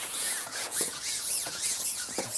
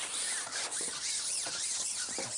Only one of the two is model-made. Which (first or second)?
first